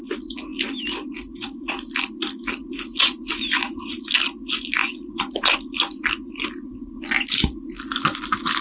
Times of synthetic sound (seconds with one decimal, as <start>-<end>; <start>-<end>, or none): none